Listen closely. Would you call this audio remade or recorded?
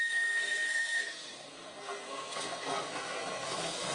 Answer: remade